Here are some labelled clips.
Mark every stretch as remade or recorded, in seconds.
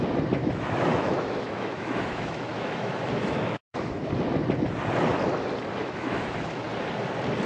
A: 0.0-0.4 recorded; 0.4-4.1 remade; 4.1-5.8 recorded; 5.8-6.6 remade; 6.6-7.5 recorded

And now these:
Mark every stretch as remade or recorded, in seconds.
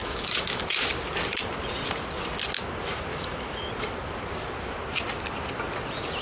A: 0.0-0.6 remade; 0.6-3.1 recorded; 3.1-3.7 remade; 3.7-6.2 recorded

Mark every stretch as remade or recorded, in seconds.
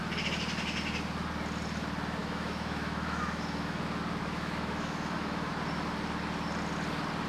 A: 0.0-2.2 recorded; 2.2-3.8 remade; 3.8-4.2 recorded; 4.2-5.5 remade; 5.5-7.3 recorded